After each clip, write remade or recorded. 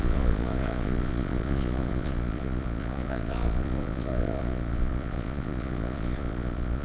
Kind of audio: remade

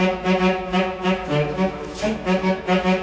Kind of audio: remade